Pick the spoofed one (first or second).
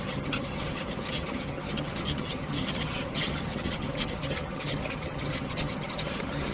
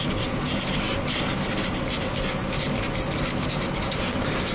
first